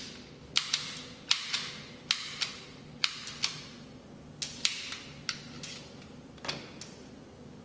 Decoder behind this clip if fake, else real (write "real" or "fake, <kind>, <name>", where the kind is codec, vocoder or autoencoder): real